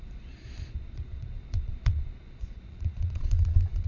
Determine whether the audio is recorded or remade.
remade